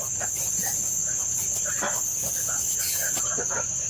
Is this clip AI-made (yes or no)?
no